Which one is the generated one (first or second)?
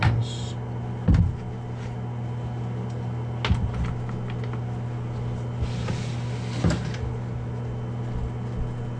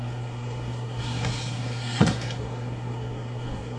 second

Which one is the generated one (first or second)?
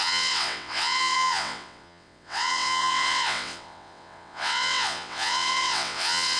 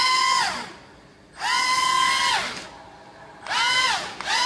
first